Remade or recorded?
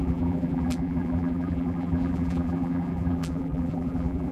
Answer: remade